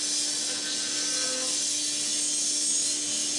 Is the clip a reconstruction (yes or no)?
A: no